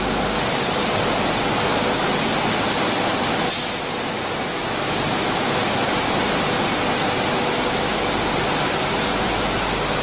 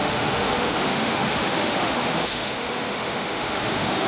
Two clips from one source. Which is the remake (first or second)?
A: second